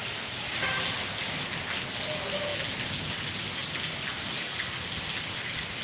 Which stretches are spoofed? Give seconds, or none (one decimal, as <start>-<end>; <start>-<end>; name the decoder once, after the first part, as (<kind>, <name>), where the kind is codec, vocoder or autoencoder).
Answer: none